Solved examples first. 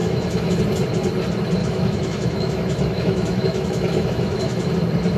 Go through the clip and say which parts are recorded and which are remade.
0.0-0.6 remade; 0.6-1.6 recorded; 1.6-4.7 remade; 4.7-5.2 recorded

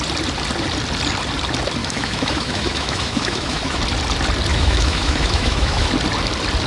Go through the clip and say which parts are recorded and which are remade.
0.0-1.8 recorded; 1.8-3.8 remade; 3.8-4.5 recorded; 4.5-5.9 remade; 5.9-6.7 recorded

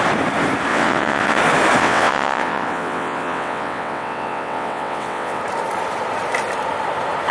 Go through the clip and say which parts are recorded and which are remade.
0.0-0.7 recorded; 0.7-1.4 remade; 1.4-1.8 recorded; 1.8-5.4 remade; 5.4-7.3 recorded

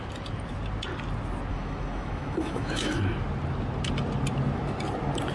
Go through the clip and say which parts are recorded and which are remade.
0.0-1.5 recorded; 1.5-3.0 remade; 3.0-5.3 recorded

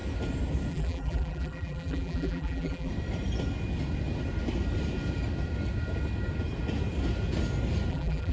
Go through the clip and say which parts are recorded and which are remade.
0.0-0.7 recorded; 0.7-2.9 remade; 2.9-7.9 recorded; 7.9-8.3 remade

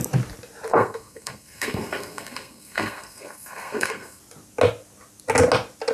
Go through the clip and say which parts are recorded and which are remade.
0.0-0.7 recorded; 0.7-4.2 remade; 4.2-5.9 recorded

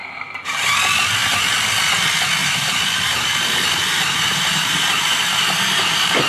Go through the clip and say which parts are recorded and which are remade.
0.0-0.7 remade; 0.7-2.4 recorded; 2.4-6.3 remade

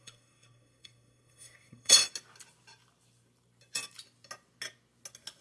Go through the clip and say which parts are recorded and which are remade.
0.0-2.0 remade; 2.0-5.4 recorded